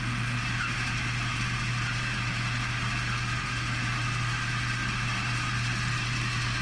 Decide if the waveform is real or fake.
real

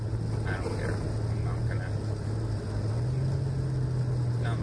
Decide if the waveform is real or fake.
real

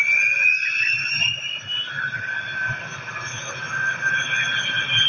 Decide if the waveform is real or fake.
real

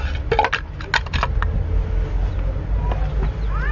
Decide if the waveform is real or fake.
real